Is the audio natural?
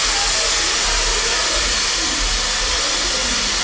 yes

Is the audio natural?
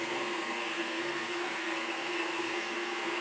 no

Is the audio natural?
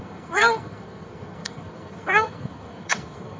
no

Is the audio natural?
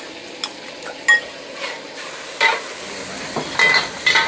yes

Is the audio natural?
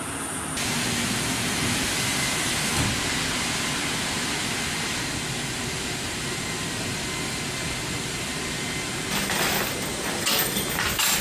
yes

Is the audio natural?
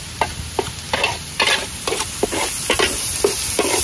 yes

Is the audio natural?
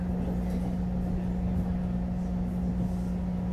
yes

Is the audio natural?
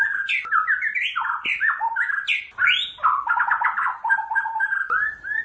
yes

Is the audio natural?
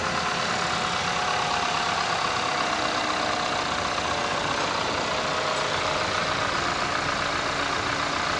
yes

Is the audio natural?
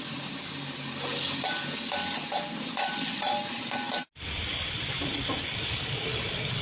yes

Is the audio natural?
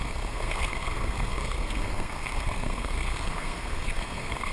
no